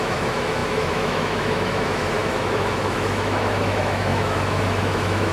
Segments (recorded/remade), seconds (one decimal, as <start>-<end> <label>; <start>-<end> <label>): 0.0-5.3 remade